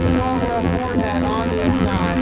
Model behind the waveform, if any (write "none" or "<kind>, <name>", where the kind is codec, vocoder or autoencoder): vocoder, BigVGAN v2